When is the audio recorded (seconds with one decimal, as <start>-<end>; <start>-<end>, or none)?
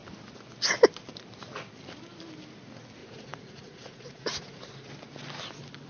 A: 0.0-3.0; 4.9-5.9